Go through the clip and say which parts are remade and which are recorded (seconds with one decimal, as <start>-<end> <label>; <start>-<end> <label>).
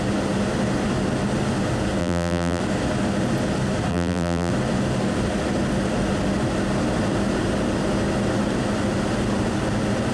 0.0-2.0 recorded; 2.0-2.6 remade; 2.6-3.9 recorded; 3.9-4.5 remade; 4.5-10.1 recorded